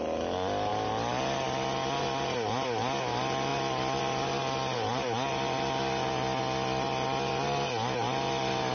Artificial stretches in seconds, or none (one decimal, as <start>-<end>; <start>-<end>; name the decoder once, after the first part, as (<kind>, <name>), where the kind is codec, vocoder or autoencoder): none